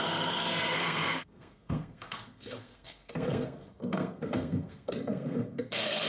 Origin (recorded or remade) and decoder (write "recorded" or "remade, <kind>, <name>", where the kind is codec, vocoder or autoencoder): remade, codec, SNAC